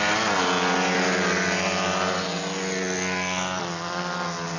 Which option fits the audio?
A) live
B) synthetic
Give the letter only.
A